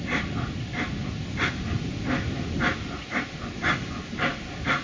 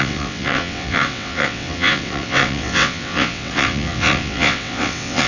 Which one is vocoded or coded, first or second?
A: second